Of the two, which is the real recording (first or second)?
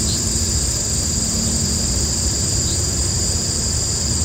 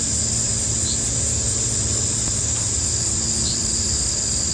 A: second